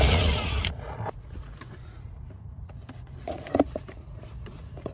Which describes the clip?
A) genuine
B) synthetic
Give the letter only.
B